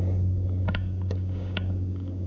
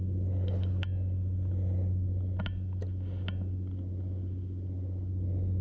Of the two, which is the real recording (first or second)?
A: second